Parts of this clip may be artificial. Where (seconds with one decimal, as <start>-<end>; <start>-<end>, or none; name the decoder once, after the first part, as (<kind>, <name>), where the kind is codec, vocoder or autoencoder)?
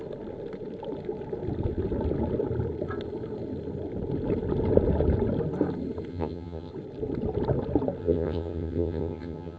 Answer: 6.1-6.7 (vocoder, HiFi-GAN); 8.0-9.6